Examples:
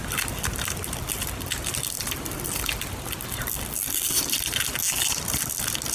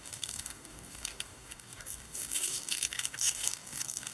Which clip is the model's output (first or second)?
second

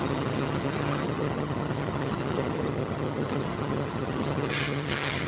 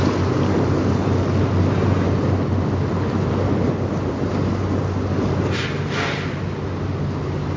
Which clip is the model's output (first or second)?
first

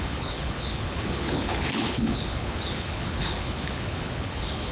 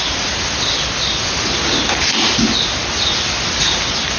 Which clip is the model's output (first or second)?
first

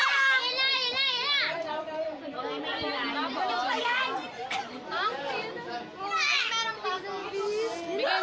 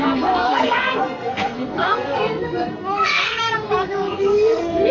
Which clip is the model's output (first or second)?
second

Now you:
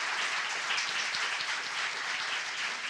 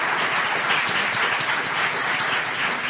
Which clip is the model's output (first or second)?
first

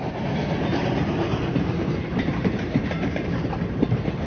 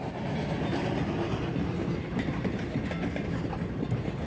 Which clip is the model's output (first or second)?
first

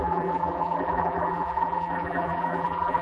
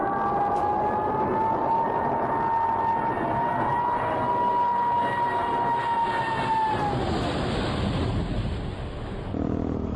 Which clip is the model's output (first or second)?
first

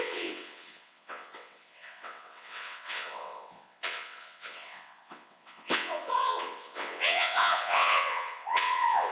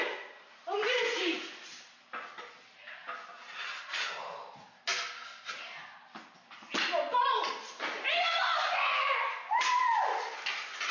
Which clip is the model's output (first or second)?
first